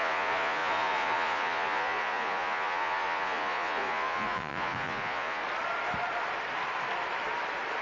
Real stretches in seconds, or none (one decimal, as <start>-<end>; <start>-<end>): 5.4-7.8